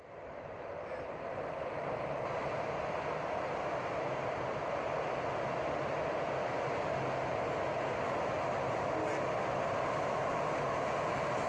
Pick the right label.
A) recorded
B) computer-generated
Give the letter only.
A